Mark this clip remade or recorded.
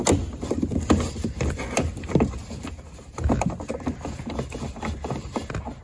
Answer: recorded